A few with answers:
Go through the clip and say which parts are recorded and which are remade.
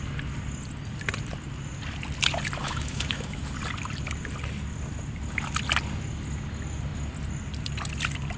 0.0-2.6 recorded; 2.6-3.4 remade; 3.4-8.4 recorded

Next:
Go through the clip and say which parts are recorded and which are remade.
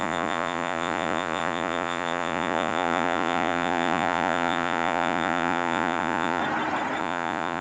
0.0-6.4 remade; 6.4-7.0 recorded; 7.0-7.6 remade